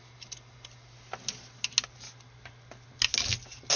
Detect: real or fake real